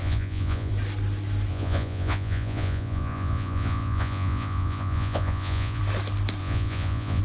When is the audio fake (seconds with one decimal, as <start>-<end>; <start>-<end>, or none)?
0.0-0.7; 1.5-5.8; 6.4-7.2